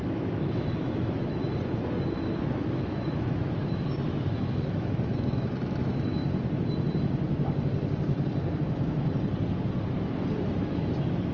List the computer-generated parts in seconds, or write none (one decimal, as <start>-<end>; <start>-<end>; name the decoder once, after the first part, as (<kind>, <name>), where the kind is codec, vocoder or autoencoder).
0.0-1.4 (autoencoder, DAC-VAE); 2.4-6.2; 10.6-11.3